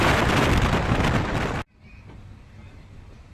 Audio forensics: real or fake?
real